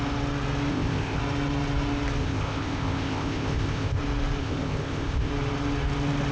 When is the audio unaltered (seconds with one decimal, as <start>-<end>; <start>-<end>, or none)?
0.0-0.7; 1.2-2.2; 4.0-4.4; 5.3-6.3